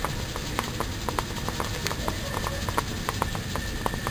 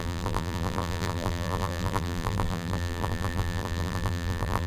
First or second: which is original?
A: first